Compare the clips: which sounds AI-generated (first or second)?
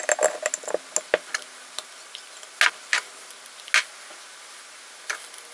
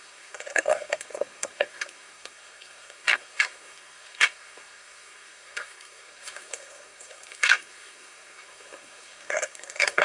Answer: second